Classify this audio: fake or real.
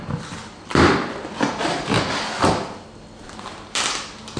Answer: real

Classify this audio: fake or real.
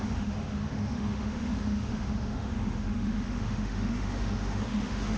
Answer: fake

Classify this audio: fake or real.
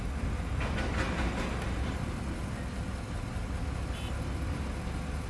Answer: real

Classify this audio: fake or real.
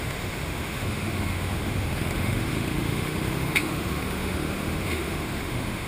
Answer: fake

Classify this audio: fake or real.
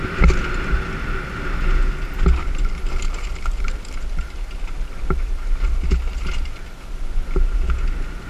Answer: real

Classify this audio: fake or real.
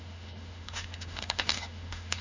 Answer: fake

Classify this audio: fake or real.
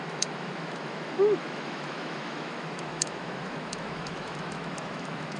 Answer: fake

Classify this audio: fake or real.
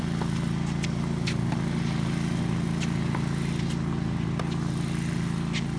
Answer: real